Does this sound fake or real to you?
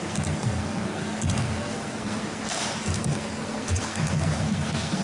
fake